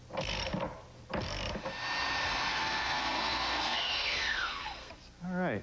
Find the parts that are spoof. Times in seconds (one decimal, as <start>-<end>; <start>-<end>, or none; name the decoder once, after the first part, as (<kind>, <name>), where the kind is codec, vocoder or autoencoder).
2.5-4.9 (codec, SNAC)